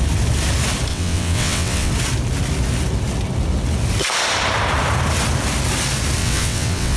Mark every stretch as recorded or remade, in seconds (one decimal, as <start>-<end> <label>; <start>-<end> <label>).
0.0-0.9 recorded; 0.9-1.9 remade; 1.9-6.2 recorded; 6.2-7.0 remade